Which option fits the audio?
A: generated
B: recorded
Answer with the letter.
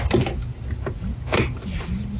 B